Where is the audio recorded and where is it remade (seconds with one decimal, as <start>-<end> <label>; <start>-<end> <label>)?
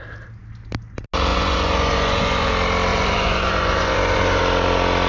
0.0-1.3 recorded; 1.3-2.5 remade; 2.5-2.9 recorded; 2.9-4.4 remade; 4.4-5.1 recorded